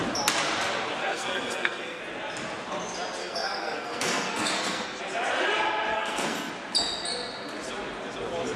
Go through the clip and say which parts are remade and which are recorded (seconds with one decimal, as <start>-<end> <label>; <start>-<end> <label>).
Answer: 0.0-1.0 recorded; 1.0-2.0 remade; 2.0-3.2 recorded; 3.2-5.0 remade; 5.0-5.9 recorded; 5.9-6.5 remade; 6.5-8.6 recorded